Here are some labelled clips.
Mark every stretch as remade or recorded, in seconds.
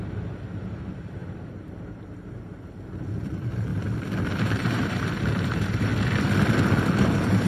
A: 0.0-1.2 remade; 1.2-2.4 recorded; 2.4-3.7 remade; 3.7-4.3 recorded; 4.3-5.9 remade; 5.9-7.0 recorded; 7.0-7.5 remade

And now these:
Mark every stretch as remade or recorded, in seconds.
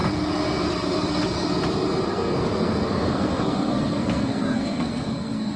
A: 0.0-2.1 recorded; 2.1-5.6 remade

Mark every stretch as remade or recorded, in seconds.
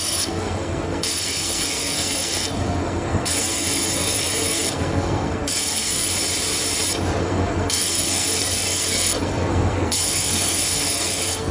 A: 0.0-6.1 remade; 6.1-7.2 recorded; 7.2-11.5 remade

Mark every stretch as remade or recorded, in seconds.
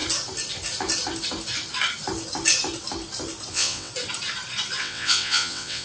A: 0.0-3.5 recorded; 3.5-3.9 remade; 3.9-4.8 recorded; 4.8-5.8 remade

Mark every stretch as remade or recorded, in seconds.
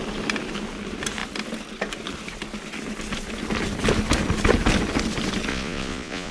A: 0.0-5.5 recorded; 5.5-6.3 remade